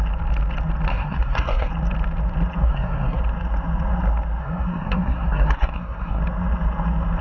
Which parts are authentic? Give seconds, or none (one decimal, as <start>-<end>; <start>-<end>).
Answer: 0.0-0.9; 1.7-2.6; 3.2-4.4; 6.2-7.2